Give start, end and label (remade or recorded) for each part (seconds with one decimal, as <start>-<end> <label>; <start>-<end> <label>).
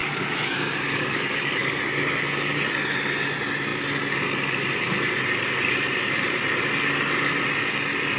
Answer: 0.0-1.8 remade; 1.8-8.2 recorded